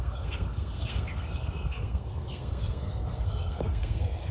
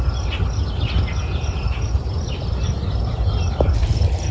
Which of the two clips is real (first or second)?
second